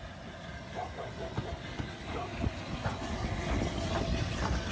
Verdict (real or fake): real